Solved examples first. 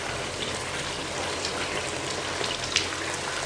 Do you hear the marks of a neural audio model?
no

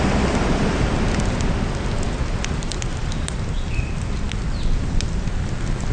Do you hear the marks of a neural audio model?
no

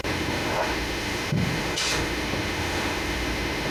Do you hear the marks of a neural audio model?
yes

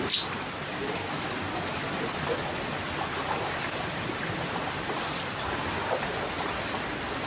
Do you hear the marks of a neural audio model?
no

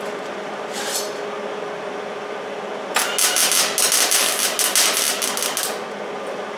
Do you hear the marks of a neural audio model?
no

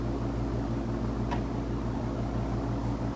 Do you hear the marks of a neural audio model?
no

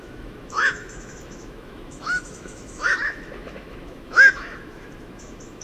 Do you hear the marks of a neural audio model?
yes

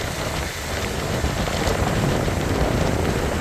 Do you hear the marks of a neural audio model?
no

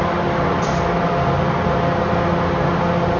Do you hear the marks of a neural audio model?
no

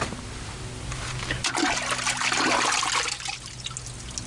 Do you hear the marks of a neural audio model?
no